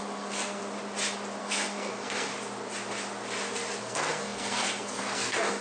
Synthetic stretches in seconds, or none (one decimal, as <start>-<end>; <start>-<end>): 0.0-0.6; 1.4-2.3; 3.8-5.6